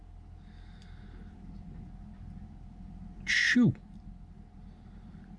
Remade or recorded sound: recorded